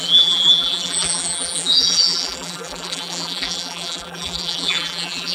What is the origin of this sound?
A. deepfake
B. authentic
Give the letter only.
A